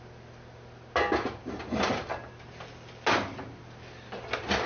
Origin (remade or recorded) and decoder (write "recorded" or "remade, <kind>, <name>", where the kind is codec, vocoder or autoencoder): recorded